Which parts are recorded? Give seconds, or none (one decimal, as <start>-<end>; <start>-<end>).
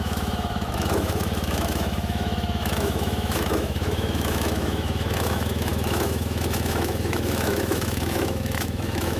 none